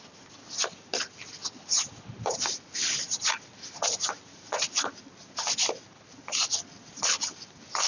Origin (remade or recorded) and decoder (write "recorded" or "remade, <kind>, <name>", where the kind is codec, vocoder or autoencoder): recorded